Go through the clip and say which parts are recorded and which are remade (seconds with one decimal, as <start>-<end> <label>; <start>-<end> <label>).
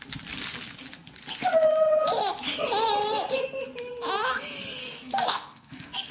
0.0-4.8 recorded; 4.8-6.1 remade